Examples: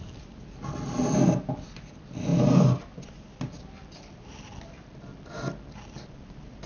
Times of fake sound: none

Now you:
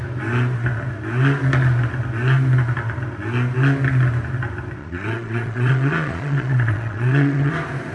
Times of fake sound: 4.8-7.5 (vocoder, Vocos)

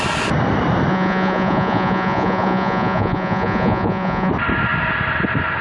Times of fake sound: 0.9-4.3 (vocoder, Vocos)

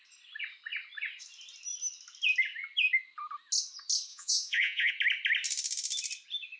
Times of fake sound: 4.1-4.9 (vocoder, Vocos)